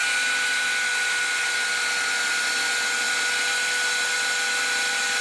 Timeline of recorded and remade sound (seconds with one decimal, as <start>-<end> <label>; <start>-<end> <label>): 0.0-5.2 recorded